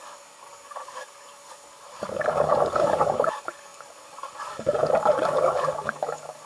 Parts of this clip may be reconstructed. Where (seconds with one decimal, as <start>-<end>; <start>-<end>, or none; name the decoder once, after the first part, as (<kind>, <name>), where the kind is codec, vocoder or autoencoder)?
0.0-6.5 (codec, DAC)